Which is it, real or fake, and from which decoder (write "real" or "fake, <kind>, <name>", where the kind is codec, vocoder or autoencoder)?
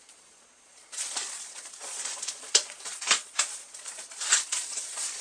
fake, vocoder, Vocos